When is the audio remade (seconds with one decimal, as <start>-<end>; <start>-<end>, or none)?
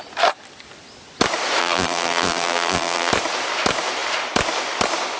1.6-3.1